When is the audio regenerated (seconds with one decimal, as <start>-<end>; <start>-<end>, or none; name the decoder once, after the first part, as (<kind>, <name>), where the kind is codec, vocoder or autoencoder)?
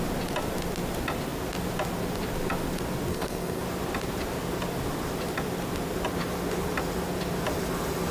3.1-3.6 (codec, SNAC)